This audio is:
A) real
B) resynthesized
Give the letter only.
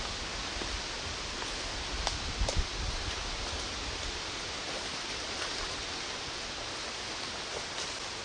A